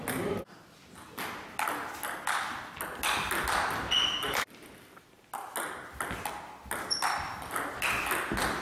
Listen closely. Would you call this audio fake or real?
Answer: real